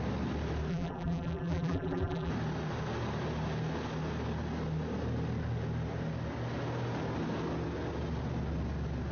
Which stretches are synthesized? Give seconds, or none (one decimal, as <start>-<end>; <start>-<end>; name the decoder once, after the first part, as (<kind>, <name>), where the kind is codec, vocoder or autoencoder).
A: 0.7-2.3 (vocoder, BigVGAN v2)